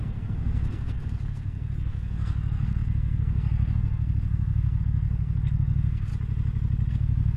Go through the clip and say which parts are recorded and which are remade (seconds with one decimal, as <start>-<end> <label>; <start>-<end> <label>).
0.0-6.1 remade; 6.1-6.9 recorded; 6.9-7.4 remade